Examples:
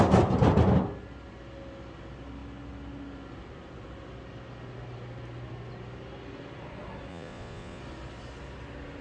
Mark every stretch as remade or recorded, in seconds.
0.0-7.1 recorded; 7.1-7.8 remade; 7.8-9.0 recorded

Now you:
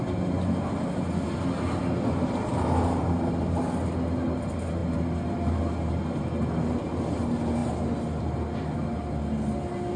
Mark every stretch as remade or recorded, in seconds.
0.0-10.0 recorded

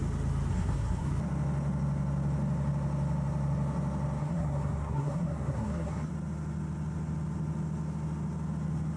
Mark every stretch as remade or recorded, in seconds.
0.0-0.5 recorded; 0.5-1.1 remade; 1.1-4.2 recorded; 4.2-6.1 remade; 6.1-9.0 recorded

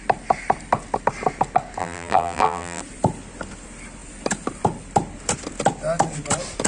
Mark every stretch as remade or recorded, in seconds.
0.0-1.8 recorded; 1.8-2.8 remade; 2.8-6.7 recorded

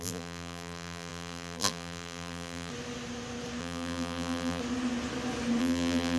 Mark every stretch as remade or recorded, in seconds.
0.0-2.7 remade; 2.7-3.6 recorded; 3.6-4.6 remade; 4.6-5.6 recorded; 5.6-6.2 remade